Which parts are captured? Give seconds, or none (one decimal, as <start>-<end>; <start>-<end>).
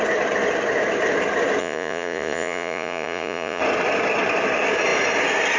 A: 0.0-1.6; 3.6-5.6